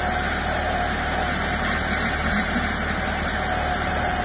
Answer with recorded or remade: remade